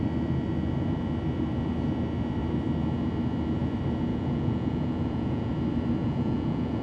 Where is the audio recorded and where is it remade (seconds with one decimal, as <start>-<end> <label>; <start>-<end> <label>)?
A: 0.0-4.1 recorded; 4.1-5.5 remade; 5.5-6.0 recorded; 6.0-6.8 remade